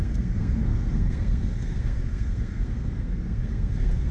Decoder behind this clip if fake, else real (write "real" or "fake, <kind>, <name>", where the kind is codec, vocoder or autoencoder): fake, codec, SNAC